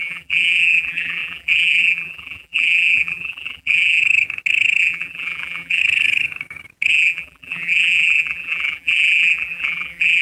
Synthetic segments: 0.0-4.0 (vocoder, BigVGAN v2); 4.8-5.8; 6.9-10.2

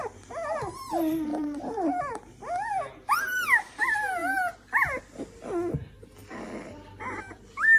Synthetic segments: 1.3-2.0 (vocoder, BigVGAN v2)

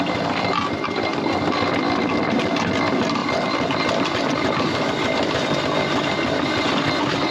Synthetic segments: 3.2-3.9 (vocoder, BigVGAN v2); 6.1-7.3

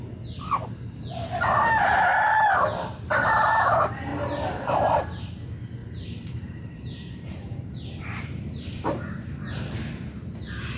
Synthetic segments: 4.1-5.2 (vocoder, BigVGAN v2); 5.8-10.4

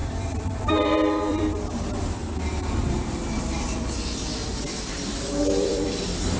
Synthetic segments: 0.0-2.2 (vocoder, BigVGAN v2); 2.9-6.4